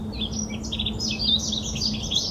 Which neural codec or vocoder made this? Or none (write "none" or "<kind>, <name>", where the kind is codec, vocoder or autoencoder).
none